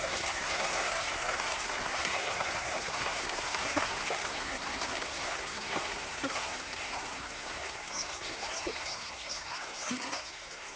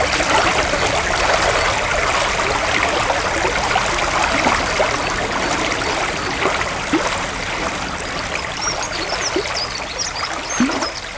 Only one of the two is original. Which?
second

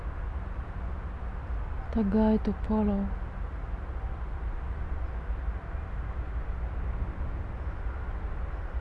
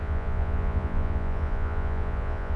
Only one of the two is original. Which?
first